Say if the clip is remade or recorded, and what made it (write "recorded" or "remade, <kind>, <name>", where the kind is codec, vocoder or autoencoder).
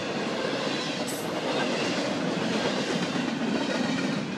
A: recorded